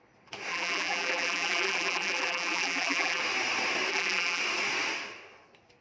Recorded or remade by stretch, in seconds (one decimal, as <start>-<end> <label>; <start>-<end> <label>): 0.0-0.5 recorded; 0.5-3.2 remade; 3.2-3.9 recorded; 3.9-4.4 remade; 4.4-5.8 recorded